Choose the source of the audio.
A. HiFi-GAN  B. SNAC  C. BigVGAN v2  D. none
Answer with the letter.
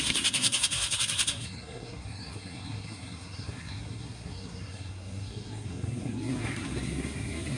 B